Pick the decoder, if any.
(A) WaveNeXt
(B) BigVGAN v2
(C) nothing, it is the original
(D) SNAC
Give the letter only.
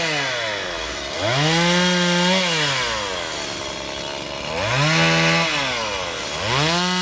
C